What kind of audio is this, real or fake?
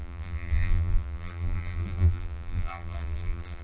fake